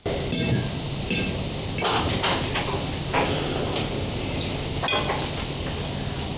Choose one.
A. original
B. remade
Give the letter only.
A